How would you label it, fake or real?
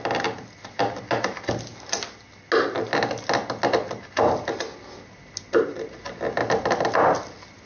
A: real